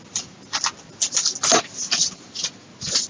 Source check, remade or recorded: recorded